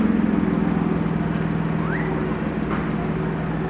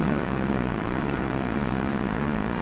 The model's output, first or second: second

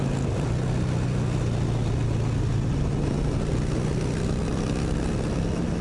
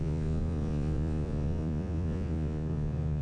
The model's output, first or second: second